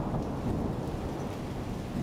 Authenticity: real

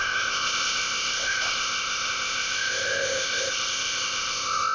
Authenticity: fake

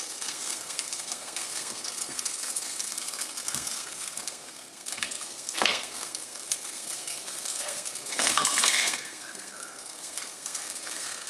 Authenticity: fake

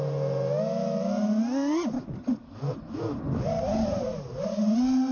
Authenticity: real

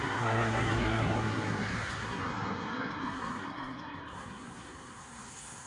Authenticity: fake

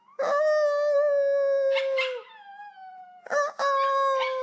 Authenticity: real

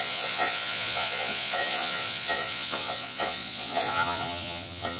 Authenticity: fake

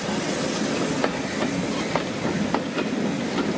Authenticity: real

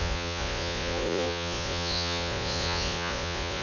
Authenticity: fake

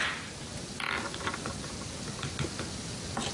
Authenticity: real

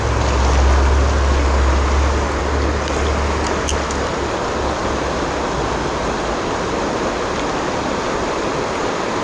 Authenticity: real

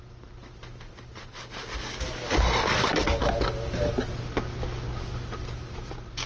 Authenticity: real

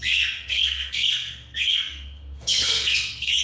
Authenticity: fake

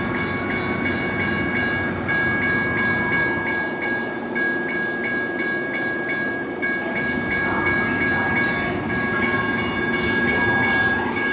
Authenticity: real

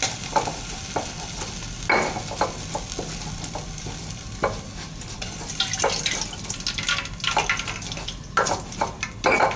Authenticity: real